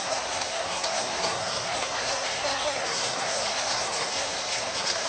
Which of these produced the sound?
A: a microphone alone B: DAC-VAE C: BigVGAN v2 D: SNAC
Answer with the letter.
D